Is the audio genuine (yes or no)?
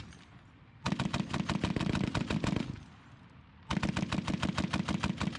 yes